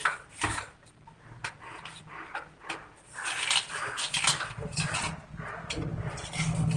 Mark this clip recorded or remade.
recorded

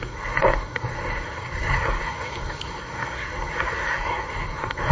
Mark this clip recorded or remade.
remade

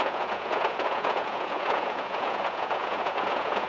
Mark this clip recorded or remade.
remade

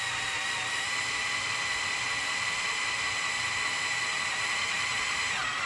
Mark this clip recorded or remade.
recorded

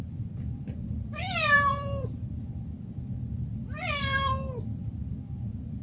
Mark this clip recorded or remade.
remade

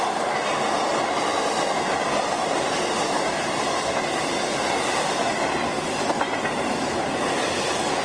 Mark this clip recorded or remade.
recorded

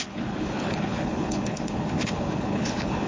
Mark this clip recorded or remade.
remade